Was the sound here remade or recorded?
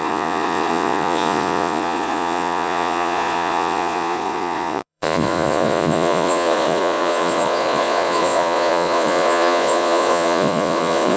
remade